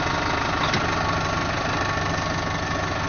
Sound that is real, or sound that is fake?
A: real